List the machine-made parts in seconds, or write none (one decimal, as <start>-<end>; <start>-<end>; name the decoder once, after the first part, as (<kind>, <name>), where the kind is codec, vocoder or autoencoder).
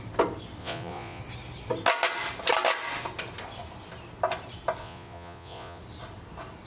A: 0.6-1.2 (vocoder, Vocos); 4.8-5.8